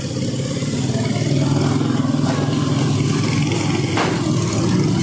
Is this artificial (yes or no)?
no